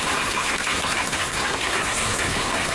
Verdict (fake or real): fake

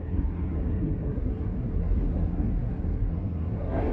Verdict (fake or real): fake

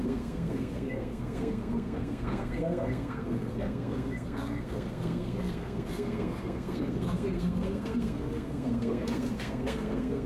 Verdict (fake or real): fake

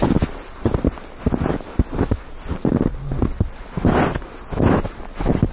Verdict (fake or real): real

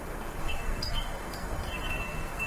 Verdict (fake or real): fake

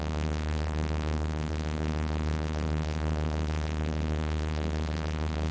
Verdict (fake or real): fake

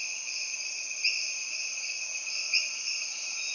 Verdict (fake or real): real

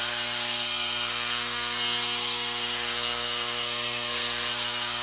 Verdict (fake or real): fake